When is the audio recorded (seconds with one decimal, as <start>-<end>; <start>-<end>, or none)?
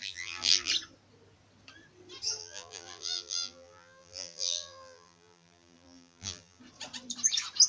0.7-2.4; 6.6-7.7